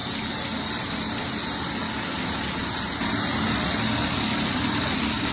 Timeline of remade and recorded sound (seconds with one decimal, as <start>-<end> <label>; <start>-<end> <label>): 0.0-5.3 recorded

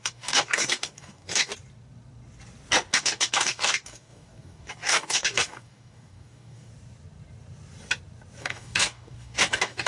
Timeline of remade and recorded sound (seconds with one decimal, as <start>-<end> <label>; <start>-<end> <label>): 0.0-1.5 remade; 1.5-2.9 recorded; 2.9-6.7 remade; 6.7-8.4 recorded; 8.4-9.9 remade

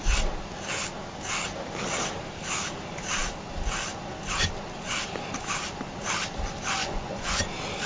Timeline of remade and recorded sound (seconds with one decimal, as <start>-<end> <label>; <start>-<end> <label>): 0.0-6.8 recorded; 6.8-7.4 remade; 7.4-7.9 recorded

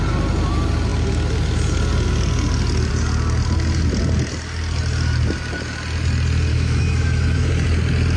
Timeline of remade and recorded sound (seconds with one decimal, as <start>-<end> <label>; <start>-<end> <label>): 0.0-6.5 recorded; 6.5-7.5 remade; 7.5-8.2 recorded

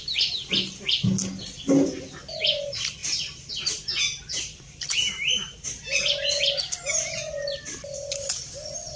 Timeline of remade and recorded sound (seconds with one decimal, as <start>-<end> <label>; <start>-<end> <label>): 0.0-9.0 recorded